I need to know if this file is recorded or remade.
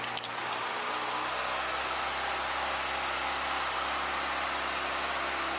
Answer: recorded